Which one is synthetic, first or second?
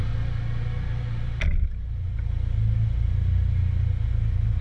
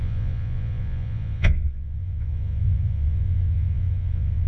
second